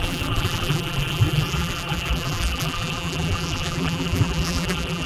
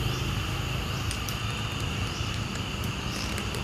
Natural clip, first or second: second